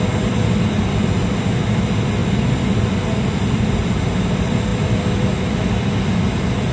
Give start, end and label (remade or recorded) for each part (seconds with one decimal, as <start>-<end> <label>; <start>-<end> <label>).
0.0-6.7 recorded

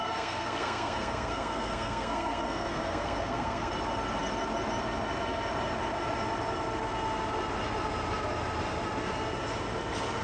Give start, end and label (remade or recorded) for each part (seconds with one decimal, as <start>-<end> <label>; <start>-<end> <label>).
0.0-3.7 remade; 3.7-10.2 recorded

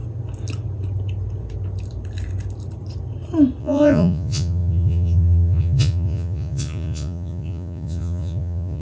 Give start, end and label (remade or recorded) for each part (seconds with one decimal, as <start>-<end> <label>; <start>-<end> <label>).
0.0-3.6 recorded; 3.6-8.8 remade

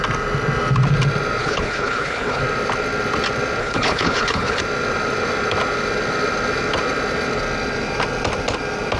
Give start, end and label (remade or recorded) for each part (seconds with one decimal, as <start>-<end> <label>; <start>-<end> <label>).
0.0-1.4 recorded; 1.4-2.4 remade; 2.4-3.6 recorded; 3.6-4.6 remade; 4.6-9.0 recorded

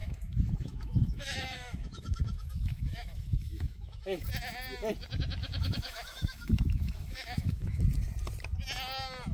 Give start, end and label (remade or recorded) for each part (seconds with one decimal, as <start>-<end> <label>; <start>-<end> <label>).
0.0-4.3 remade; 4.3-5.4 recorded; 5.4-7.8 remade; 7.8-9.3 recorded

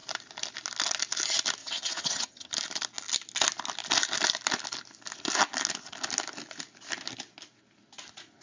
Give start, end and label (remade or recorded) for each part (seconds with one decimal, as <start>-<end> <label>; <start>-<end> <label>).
0.0-1.6 recorded; 1.6-2.5 remade; 2.5-8.4 recorded